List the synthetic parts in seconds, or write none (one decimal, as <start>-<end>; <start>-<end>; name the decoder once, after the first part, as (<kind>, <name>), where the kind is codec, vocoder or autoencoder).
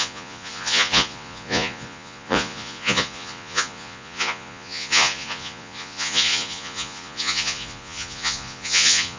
0.0-9.2 (vocoder, Vocos)